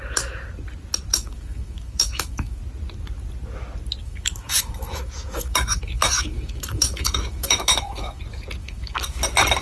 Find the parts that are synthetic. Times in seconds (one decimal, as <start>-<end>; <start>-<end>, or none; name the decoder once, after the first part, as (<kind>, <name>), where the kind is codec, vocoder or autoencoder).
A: 1.1-2.6 (autoencoder, DAC-VAE); 4.0-8.2; 8.6-9.2